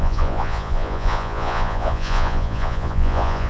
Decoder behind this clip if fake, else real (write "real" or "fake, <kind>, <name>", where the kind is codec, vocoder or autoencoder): fake, vocoder, Vocos